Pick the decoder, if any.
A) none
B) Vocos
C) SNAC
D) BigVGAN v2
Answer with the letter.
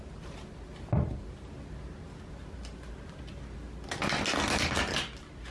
A